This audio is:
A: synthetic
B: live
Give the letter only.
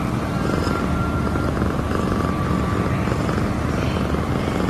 B